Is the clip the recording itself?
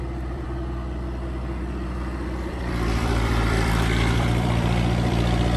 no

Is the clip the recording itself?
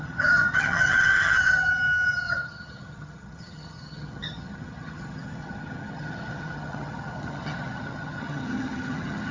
no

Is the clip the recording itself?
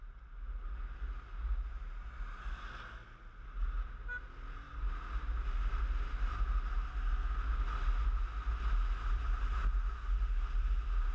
yes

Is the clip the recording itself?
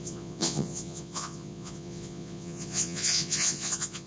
no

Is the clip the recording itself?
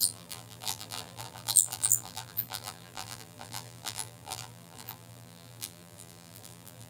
no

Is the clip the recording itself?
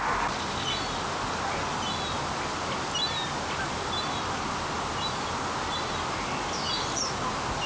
yes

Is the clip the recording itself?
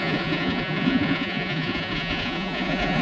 no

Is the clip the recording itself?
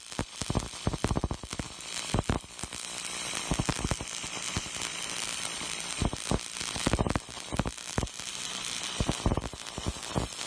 yes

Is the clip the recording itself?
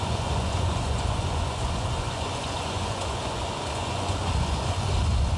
no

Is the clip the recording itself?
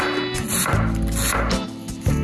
yes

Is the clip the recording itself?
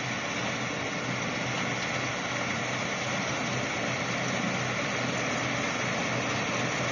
yes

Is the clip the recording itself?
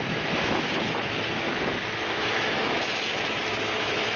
no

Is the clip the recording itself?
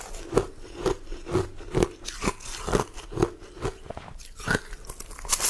yes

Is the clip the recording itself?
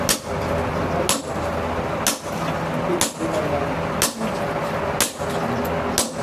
yes